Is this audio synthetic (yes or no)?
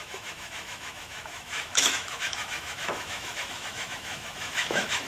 yes